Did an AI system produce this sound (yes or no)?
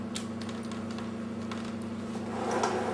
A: no